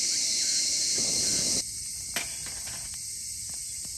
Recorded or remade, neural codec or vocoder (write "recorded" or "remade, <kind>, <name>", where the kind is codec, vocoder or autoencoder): recorded